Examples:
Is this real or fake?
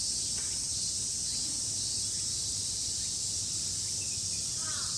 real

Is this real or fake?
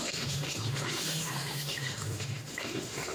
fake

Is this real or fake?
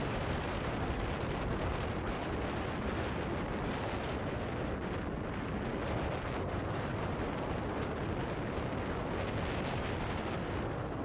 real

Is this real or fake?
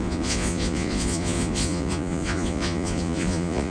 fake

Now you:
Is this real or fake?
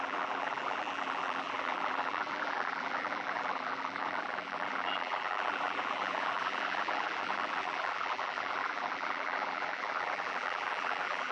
fake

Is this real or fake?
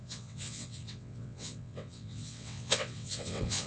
fake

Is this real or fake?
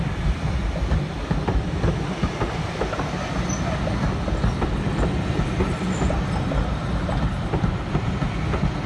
real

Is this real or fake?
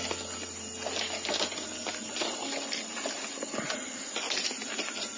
real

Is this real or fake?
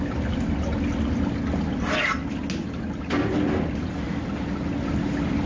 real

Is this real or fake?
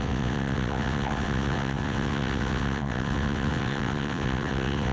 fake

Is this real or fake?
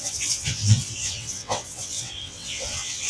fake